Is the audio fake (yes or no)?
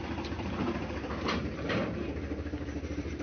yes